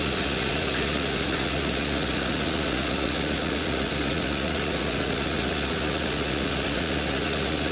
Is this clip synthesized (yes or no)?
yes